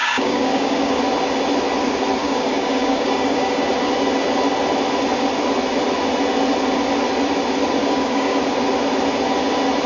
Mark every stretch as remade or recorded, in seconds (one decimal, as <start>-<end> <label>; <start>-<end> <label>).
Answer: 0.0-1.0 remade; 1.0-2.2 recorded; 2.2-3.7 remade; 3.7-7.8 recorded; 7.8-8.4 remade; 8.4-9.9 recorded